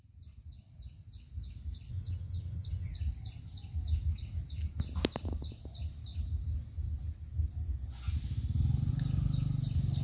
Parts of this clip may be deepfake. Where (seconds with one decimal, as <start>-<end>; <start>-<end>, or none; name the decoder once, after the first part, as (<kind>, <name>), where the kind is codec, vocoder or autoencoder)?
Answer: 1.9-2.9 (vocoder, HiFi-GAN)